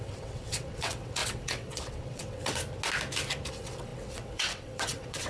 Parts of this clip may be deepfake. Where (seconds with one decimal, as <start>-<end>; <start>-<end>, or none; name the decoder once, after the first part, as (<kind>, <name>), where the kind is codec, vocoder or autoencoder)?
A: 0.0-2.6 (vocoder, WaveNeXt); 3.5-5.3